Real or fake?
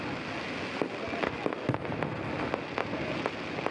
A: real